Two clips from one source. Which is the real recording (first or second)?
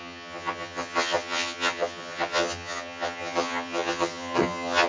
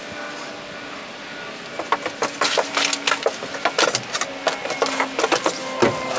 second